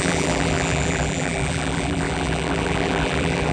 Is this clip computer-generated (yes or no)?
yes